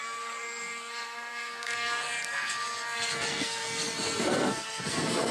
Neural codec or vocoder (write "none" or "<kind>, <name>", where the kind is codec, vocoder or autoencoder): codec, SNAC